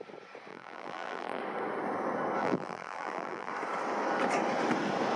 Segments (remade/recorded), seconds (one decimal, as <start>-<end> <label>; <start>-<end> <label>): 0.0-0.5 recorded; 0.5-1.4 remade; 1.4-2.4 recorded; 2.4-3.5 remade; 3.5-5.2 recorded